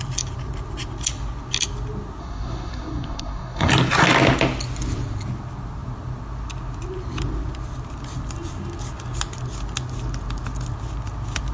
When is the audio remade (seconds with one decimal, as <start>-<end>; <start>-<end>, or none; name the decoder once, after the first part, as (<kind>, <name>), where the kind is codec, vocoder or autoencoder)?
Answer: 2.2-3.7 (codec, SNAC)